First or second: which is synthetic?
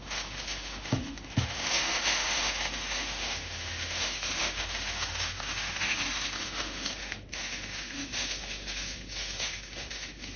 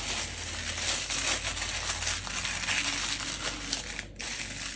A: first